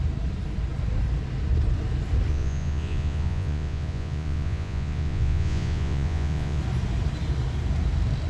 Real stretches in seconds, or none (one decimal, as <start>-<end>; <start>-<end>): 0.0-2.3; 6.6-8.3